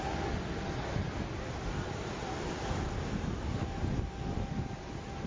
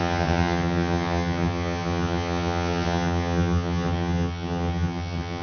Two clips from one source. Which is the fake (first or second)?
second